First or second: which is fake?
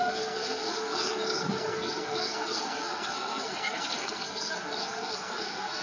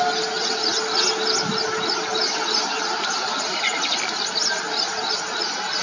first